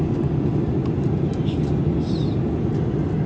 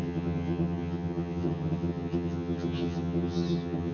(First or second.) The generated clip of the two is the second